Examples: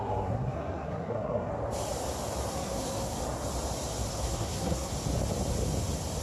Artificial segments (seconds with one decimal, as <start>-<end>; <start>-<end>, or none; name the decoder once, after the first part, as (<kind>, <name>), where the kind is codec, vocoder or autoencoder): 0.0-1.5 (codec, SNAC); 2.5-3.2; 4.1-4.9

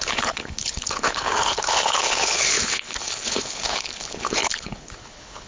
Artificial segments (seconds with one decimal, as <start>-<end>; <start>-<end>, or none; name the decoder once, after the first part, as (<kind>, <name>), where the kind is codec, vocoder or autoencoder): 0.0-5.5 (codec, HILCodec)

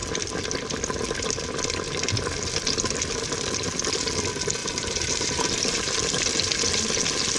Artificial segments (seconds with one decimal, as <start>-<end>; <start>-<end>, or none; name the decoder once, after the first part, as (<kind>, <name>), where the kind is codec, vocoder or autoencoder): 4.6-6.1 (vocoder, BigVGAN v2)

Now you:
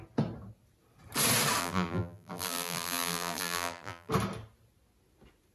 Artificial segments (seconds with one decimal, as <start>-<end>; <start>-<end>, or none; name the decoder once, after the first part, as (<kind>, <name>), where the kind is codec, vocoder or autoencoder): 1.6-4.1 (vocoder, BigVGAN v2)

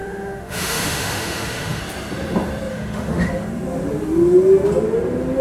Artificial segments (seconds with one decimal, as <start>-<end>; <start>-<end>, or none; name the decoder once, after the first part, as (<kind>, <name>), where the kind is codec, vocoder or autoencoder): 0.0-1.8 (autoencoder, DAC-VAE); 2.7-3.3

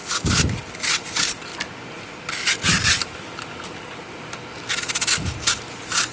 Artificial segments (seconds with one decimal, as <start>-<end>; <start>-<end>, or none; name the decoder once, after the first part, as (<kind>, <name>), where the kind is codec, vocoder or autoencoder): 1.1-1.5 (vocoder, BigVGAN v2); 5.2-6.1

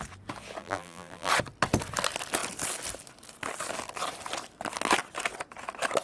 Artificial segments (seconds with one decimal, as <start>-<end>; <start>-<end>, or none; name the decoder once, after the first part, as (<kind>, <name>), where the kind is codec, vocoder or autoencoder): 0.6-1.3 (vocoder, BigVGAN v2)

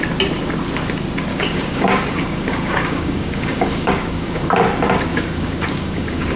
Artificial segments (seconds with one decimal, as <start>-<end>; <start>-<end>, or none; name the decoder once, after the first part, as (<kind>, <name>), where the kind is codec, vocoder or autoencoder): 1.3-4.5 (codec, DAC); 5.1-6.4